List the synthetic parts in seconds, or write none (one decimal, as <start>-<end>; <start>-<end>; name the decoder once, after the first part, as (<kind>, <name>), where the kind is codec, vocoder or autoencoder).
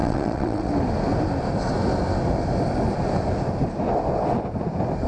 0.0-0.7 (vocoder, WaveNeXt)